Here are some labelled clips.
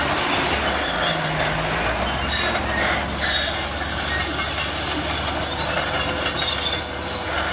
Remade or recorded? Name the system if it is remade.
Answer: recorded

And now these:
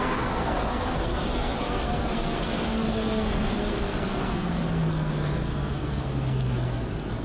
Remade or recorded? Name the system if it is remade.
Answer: remade, codec, SNAC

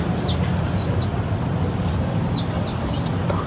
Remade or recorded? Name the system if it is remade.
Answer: recorded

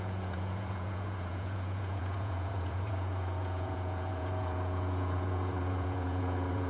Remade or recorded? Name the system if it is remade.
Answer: remade, vocoder, Vocos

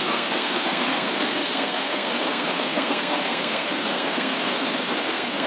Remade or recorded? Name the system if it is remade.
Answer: remade, codec, SNAC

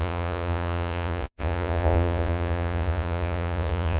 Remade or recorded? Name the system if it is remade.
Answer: remade, vocoder, Vocos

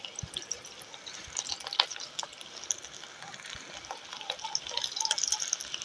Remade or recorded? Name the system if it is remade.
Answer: recorded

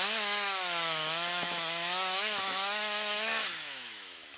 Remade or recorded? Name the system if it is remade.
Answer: remade, autoencoder, DAC-VAE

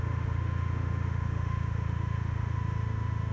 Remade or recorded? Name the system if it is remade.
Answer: remade, autoencoder, DAC-VAE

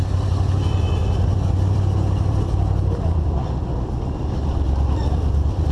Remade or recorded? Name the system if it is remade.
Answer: remade, vocoder, BigVGAN v2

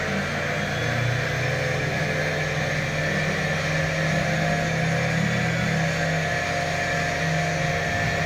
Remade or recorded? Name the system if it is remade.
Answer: recorded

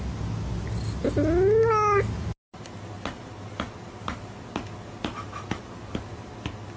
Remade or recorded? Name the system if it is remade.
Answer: recorded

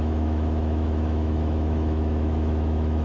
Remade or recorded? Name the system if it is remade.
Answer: remade, autoencoder, DAC-VAE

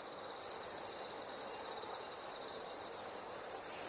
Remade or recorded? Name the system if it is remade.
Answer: recorded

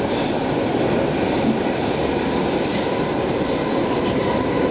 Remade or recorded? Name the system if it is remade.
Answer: recorded